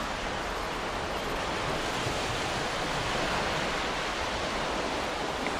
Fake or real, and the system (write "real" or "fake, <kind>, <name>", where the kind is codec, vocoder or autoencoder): real